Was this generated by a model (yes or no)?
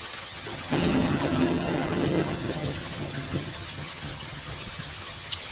yes